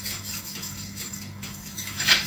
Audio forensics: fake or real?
fake